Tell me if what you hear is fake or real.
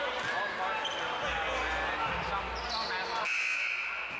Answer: real